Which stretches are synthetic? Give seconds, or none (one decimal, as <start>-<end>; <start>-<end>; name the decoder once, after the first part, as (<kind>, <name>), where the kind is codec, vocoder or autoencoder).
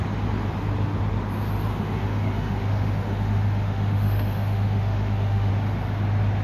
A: 1.7-5.5 (autoencoder, DAC-VAE)